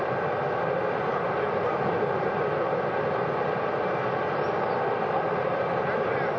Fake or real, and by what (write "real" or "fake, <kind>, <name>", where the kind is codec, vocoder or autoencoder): real